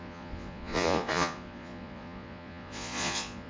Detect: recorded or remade remade